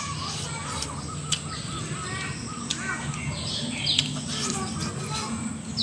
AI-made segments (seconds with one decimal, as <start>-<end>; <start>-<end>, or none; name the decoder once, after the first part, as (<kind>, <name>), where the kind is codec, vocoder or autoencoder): none